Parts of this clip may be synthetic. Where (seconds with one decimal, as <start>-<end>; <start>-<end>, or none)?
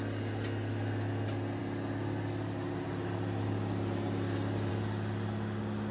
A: none